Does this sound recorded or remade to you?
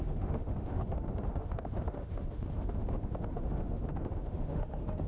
remade